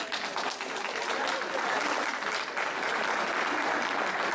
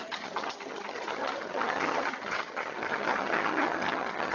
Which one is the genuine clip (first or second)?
first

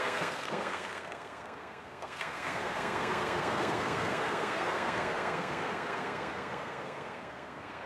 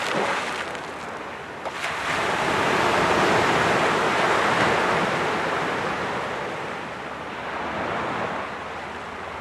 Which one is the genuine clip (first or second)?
second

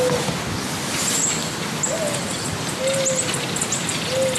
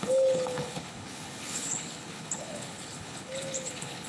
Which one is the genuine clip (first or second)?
first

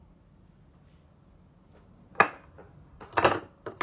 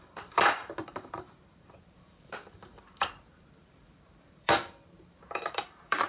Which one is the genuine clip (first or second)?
first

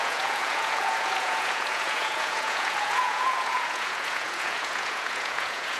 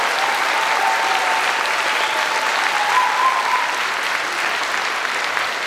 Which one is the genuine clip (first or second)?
second